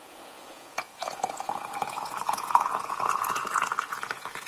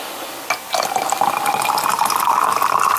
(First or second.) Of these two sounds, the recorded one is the second